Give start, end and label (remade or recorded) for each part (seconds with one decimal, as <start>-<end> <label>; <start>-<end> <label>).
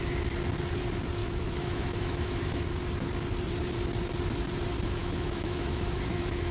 0.0-1.2 recorded; 1.2-2.6 remade; 2.6-5.0 recorded; 5.0-6.5 remade